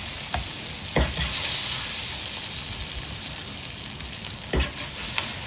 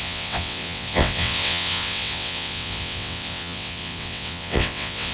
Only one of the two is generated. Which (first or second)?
second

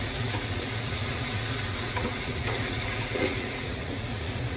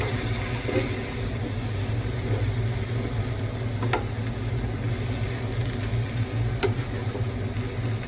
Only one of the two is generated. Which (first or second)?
first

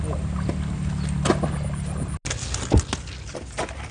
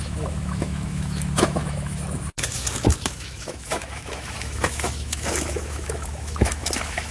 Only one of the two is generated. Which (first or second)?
second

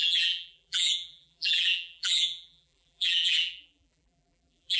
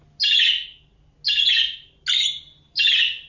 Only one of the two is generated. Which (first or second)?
first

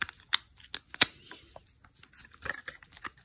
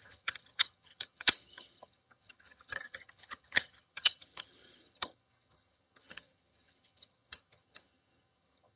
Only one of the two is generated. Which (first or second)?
second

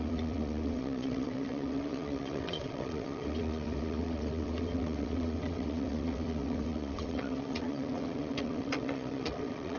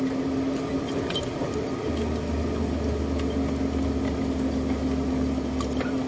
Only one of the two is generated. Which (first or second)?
first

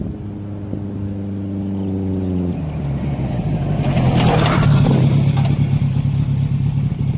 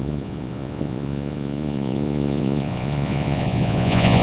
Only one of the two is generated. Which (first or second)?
second